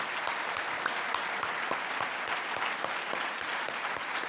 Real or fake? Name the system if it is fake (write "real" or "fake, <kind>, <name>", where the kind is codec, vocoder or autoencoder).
real